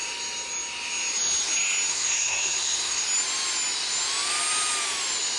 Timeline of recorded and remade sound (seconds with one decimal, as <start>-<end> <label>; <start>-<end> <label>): 0.0-1.9 recorded; 1.9-3.0 remade; 3.0-5.4 recorded

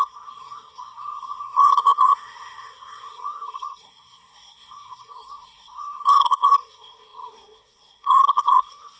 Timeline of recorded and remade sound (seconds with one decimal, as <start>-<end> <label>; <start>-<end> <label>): 0.0-9.0 remade

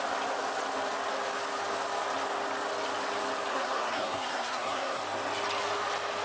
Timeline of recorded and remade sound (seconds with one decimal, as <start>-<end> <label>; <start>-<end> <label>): 0.0-3.5 recorded; 3.5-5.0 remade; 5.0-6.2 recorded